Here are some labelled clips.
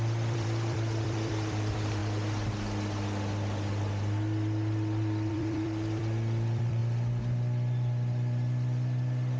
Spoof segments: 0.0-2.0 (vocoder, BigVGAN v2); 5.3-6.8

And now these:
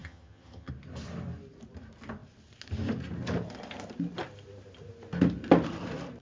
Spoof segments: 0.0-0.7 (vocoder, HiFi-GAN)